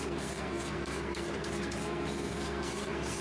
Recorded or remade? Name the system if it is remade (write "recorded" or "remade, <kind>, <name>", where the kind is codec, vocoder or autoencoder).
remade, codec, SNAC